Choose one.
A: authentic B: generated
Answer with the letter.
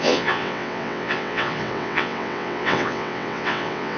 B